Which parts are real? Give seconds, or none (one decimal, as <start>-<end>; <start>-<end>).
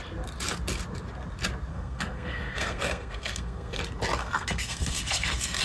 0.0-1.7; 3.8-4.2